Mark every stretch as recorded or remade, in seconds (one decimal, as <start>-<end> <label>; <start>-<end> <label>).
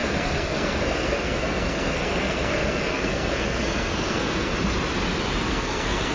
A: 0.0-4.5 remade; 4.5-5.4 recorded; 5.4-6.1 remade